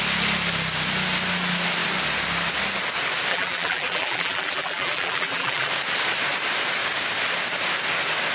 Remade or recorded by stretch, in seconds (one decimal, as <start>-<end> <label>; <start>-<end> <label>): 0.0-3.3 recorded; 3.3-5.7 remade; 5.7-8.3 recorded

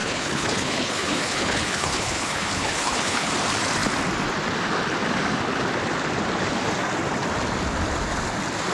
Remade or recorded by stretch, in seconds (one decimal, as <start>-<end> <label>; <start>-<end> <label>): 0.0-3.3 remade; 3.3-8.7 recorded

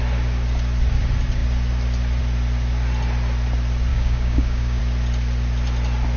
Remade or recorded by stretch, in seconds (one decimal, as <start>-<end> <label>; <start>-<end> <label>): 0.0-3.9 recorded; 3.9-4.8 remade; 4.8-6.2 recorded

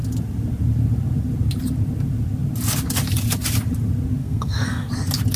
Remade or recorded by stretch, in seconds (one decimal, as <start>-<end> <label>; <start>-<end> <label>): 0.0-4.2 recorded; 4.2-4.9 remade; 4.9-5.4 recorded